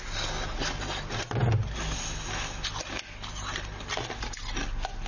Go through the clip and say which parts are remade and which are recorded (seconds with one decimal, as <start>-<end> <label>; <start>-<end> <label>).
0.0-5.1 recorded